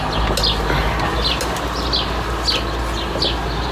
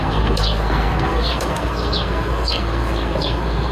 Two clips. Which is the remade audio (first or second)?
second